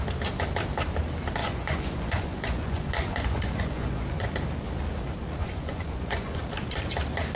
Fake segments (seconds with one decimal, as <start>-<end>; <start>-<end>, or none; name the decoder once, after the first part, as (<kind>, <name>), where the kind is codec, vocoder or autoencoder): 1.4-4.3 (vocoder, Vocos); 5.4-6.4